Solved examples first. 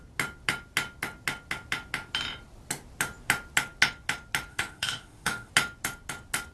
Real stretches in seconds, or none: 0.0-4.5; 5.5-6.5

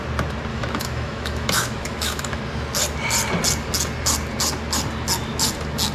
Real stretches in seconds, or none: 0.0-0.5; 2.4-5.9

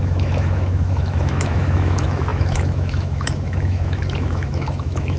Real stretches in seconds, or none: none

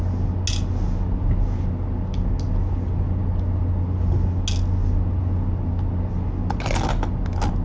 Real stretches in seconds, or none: 0.0-7.6

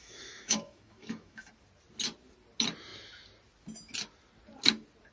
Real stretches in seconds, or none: 1.5-5.1

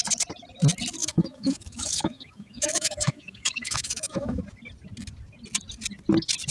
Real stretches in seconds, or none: 0.0-1.0; 4.4-6.5

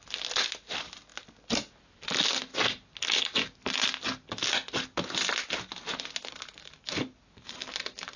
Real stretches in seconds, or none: 0.0-8.2